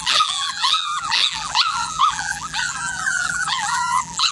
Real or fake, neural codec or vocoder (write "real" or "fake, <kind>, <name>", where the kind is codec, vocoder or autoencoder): fake, vocoder, BigVGAN v2